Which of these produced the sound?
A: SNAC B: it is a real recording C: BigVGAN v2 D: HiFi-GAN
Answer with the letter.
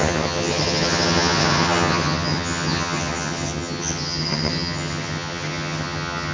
D